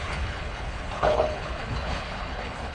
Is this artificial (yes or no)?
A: yes